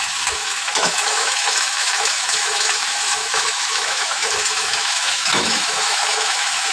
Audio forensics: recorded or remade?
remade